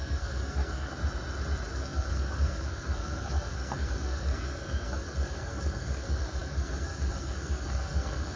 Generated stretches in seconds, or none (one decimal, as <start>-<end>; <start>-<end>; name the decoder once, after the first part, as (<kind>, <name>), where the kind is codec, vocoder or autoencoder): 0.0-0.9 (codec, SNAC); 1.7-8.4